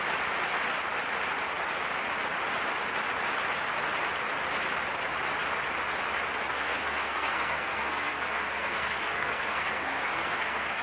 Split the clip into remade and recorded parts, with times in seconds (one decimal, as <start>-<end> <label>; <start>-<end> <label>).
0.0-6.5 recorded; 6.5-10.8 remade